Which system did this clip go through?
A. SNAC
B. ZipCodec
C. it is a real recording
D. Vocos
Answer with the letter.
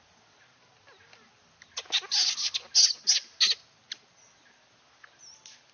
C